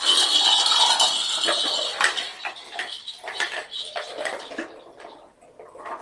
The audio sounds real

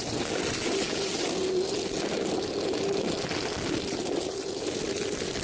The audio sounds real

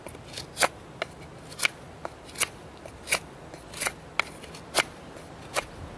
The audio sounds real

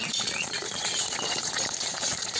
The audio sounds fake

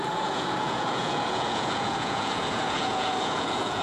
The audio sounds fake